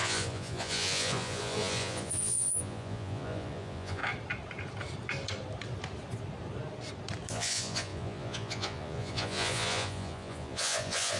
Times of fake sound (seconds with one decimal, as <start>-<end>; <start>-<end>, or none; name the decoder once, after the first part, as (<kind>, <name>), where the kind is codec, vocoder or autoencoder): 0.0-4.0 (vocoder, Vocos); 7.3-11.2